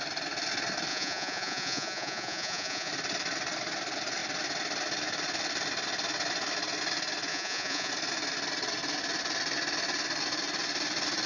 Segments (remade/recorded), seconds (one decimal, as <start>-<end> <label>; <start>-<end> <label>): 0.0-0.9 recorded; 0.9-2.9 remade; 2.9-7.3 recorded; 7.3-7.9 remade; 7.9-11.3 recorded